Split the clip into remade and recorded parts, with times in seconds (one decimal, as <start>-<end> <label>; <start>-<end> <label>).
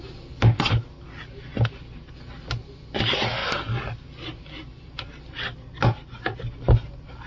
0.0-1.5 recorded; 1.5-2.1 remade; 2.1-7.3 recorded